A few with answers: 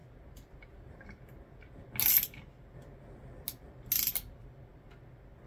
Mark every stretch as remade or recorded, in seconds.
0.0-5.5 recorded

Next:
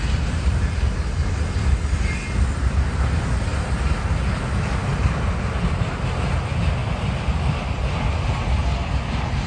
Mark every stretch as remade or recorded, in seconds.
0.0-9.5 recorded

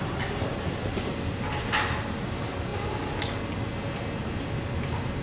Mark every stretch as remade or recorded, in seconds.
0.0-4.2 recorded; 4.2-5.2 remade

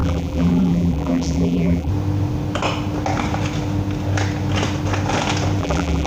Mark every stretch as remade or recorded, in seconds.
0.0-1.9 remade; 1.9-5.6 recorded; 5.6-6.1 remade

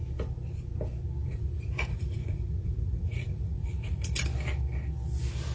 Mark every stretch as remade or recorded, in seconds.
0.0-1.2 recorded; 1.2-4.1 remade; 4.1-5.5 recorded